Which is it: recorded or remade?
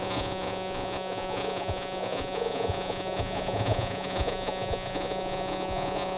remade